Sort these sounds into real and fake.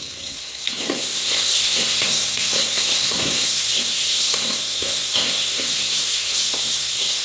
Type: fake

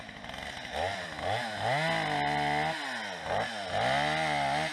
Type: real